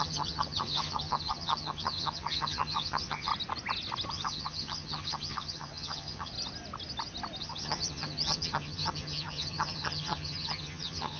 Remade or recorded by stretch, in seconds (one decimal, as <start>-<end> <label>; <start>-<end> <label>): 0.0-3.3 remade; 3.3-4.1 recorded; 4.1-6.3 remade; 6.3-7.4 recorded; 7.4-11.2 remade